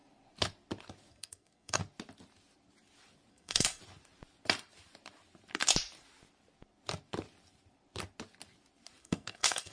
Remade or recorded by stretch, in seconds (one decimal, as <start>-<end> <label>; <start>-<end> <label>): 0.0-1.1 recorded; 1.1-1.8 remade; 1.8-3.3 recorded; 3.3-3.8 remade; 3.8-9.0 recorded; 9.0-9.7 remade